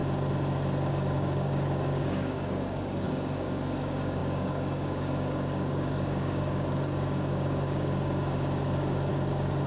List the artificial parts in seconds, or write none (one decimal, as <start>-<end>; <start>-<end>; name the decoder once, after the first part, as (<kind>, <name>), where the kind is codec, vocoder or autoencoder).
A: 0.9-9.7 (codec, DAC)